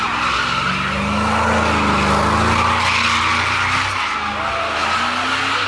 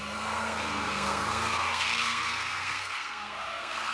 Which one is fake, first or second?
second